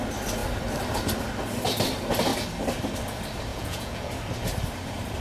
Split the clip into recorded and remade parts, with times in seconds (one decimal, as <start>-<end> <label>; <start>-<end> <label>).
0.0-3.5 recorded; 3.5-4.1 remade; 4.1-5.2 recorded